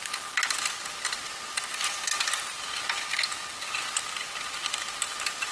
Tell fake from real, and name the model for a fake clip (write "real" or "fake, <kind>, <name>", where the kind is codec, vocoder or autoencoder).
real